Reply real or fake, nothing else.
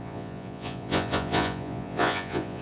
fake